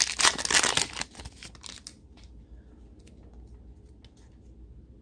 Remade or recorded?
recorded